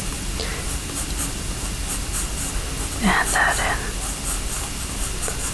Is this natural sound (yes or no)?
yes